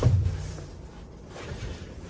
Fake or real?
fake